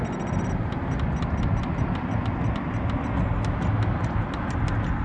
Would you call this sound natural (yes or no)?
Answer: yes